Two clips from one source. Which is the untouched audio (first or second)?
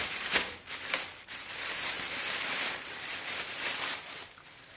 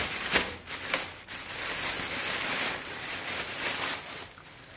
second